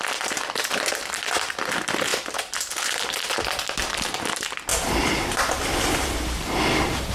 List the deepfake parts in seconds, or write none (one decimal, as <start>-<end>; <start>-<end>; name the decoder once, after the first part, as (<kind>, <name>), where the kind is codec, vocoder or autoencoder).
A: none